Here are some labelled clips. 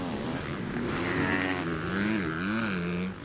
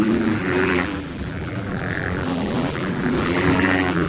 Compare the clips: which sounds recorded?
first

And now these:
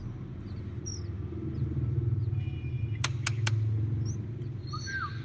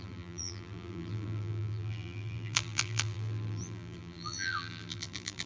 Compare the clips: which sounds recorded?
first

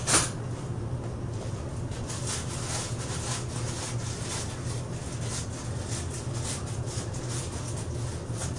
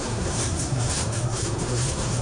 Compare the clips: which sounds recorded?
first